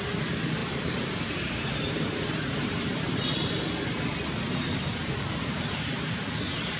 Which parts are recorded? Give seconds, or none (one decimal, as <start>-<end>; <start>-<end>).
0.0-0.6; 3.2-5.0; 6.2-6.8